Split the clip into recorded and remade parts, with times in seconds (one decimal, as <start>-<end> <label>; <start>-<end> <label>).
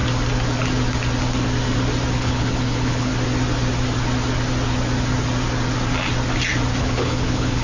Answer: 0.0-2.1 recorded; 2.1-3.1 remade; 3.1-6.8 recorded; 6.8-7.6 remade